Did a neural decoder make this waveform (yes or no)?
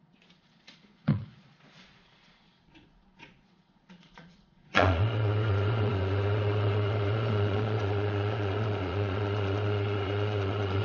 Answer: yes